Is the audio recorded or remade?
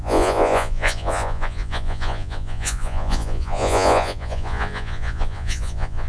remade